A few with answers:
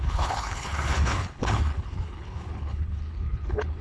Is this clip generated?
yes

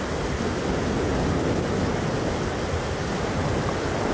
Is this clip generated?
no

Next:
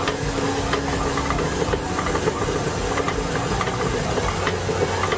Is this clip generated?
no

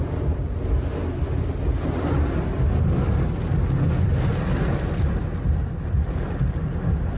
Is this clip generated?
no